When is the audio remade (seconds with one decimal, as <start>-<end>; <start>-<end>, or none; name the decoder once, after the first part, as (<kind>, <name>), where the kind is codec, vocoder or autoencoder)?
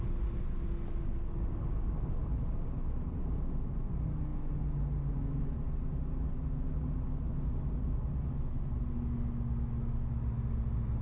none